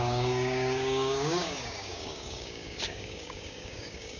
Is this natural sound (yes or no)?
no